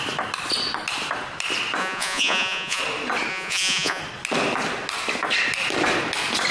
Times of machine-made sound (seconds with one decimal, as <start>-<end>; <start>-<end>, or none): 1.8-2.8; 3.3-4.0